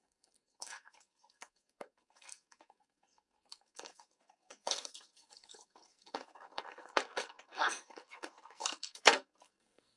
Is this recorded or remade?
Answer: remade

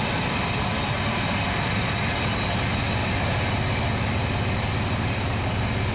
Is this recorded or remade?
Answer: recorded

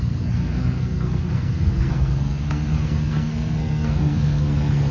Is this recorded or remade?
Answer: remade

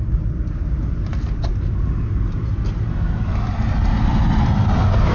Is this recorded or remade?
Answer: recorded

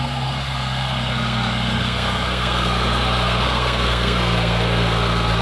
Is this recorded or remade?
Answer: remade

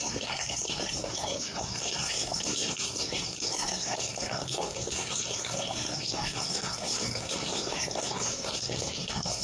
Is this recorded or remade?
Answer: remade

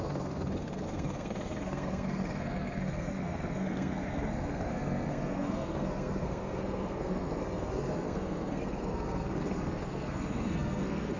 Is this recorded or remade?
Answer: remade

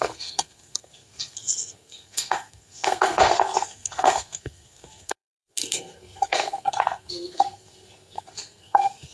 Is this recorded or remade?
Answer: remade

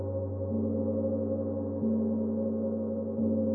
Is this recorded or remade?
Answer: recorded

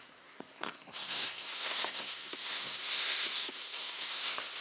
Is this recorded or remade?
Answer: remade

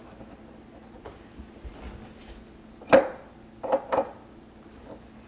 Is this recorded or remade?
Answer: recorded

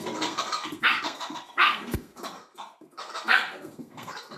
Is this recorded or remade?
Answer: remade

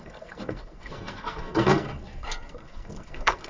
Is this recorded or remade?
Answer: remade